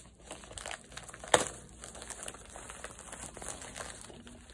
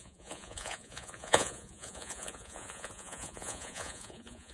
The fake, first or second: second